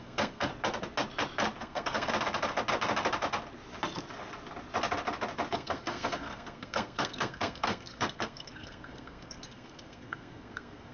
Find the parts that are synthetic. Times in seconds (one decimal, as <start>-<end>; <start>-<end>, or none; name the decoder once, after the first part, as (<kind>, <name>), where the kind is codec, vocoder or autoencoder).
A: 0.0-0.5 (codec, SNAC); 1.6-2.1; 5.5-10.9